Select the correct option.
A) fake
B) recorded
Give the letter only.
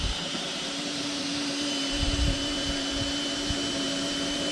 A